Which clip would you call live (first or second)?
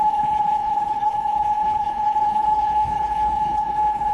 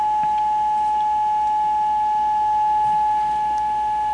second